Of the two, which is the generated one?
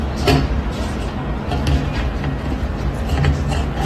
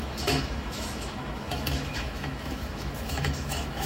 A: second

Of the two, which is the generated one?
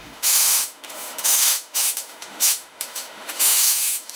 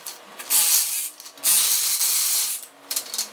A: first